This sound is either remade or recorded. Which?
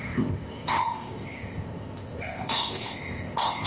remade